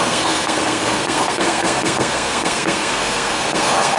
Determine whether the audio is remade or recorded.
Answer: remade